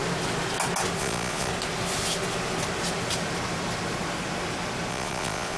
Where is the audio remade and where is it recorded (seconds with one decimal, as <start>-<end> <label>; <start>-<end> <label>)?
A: 0.0-1.0 recorded; 1.0-1.5 remade; 1.5-4.9 recorded; 4.9-5.6 remade